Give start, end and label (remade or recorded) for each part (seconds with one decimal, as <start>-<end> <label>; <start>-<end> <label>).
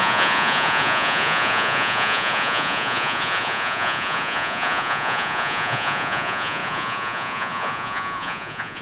0.0-8.8 remade